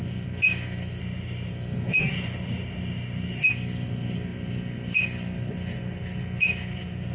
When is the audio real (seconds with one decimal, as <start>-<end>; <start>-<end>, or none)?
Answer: 0.0-1.0; 1.5-1.9; 3.5-7.1